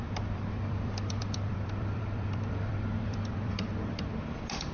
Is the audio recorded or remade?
remade